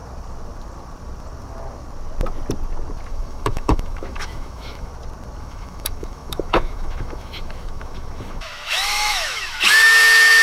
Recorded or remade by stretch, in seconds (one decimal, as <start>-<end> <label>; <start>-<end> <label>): 0.0-3.1 recorded; 3.1-4.9 remade; 4.9-5.4 recorded; 5.4-10.4 remade